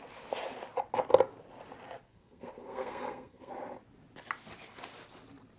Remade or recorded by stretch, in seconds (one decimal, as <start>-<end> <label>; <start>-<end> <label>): 0.0-2.1 recorded; 2.1-3.5 remade; 3.5-5.6 recorded